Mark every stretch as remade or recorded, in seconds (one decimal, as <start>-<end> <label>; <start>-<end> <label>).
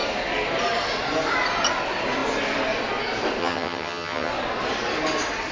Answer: 0.0-3.4 recorded; 3.4-4.3 remade; 4.3-5.5 recorded